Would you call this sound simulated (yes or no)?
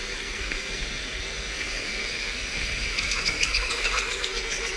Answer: yes